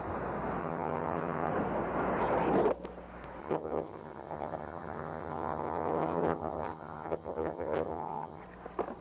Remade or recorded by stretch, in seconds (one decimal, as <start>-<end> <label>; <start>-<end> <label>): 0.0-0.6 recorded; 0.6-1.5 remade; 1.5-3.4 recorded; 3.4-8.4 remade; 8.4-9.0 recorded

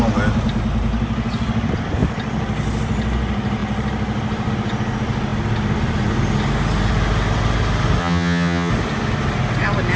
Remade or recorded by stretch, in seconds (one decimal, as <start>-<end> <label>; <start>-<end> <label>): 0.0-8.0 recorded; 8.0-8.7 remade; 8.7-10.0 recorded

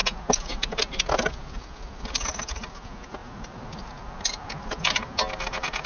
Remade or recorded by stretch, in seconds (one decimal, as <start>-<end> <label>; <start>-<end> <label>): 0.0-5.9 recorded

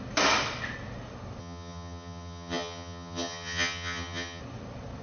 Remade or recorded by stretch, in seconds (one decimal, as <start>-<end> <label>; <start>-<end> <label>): 0.0-1.4 recorded; 1.4-4.4 remade; 4.4-5.0 recorded

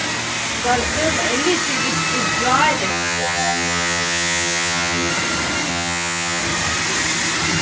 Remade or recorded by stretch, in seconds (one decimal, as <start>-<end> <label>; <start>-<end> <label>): 0.0-2.9 recorded; 2.9-5.1 remade; 5.1-5.7 recorded; 5.7-6.4 remade; 6.4-7.6 recorded

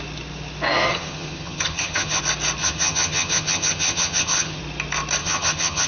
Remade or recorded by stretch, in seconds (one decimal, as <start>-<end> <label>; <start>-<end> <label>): 0.0-0.9 recorded; 0.9-2.2 remade; 2.2-2.6 recorded; 2.6-4.6 remade; 4.6-5.2 recorded; 5.2-5.9 remade

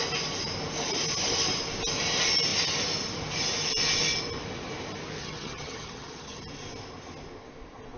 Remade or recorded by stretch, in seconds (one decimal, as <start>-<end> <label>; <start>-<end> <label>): 0.0-5.2 recorded; 5.2-6.4 remade; 6.4-8.0 recorded

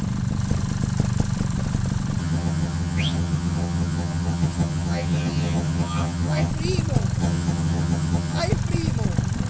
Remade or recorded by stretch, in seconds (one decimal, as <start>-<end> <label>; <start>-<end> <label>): 0.0-2.2 recorded; 2.2-6.5 remade; 6.5-7.2 recorded; 7.2-8.4 remade; 8.4-9.5 recorded